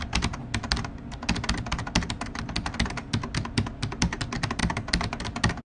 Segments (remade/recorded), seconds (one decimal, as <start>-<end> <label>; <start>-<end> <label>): 0.0-5.6 recorded